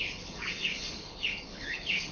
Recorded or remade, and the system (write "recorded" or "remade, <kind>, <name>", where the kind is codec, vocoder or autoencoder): remade, codec, HILCodec